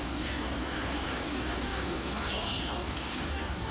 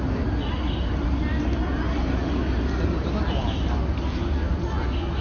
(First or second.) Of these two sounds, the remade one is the first